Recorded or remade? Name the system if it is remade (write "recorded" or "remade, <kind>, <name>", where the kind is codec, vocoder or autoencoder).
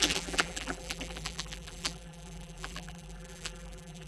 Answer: remade, vocoder, BigVGAN v2